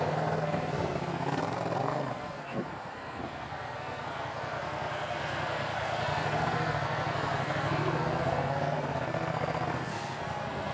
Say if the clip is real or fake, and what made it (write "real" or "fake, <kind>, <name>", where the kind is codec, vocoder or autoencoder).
fake, codec, SNAC